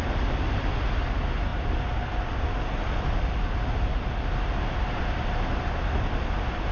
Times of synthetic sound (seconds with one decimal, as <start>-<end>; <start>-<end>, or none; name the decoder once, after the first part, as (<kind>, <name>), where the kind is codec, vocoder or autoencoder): none